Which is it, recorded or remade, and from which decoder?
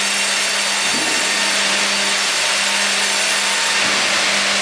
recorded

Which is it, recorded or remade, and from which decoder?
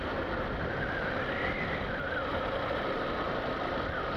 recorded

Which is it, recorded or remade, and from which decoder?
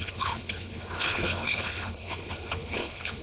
remade, codec, HILCodec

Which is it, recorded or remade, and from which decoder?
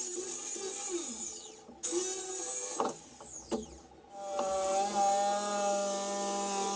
recorded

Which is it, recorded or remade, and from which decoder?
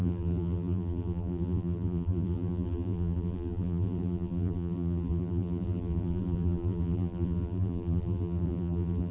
remade, vocoder, BigVGAN v2